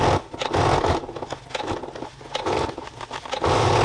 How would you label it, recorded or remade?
recorded